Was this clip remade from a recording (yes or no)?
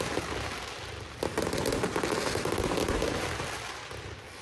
no